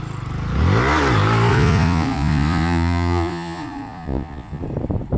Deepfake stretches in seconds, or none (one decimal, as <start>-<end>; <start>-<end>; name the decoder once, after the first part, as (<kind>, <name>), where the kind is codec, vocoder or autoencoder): 1.5-4.6 (vocoder, Vocos)